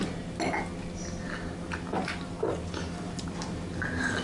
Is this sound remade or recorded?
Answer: recorded